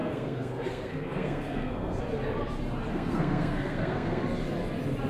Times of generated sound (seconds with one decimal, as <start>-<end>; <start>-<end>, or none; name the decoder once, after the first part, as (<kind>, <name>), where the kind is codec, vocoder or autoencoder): 0.0-2.0 (codec, SNAC); 2.9-4.2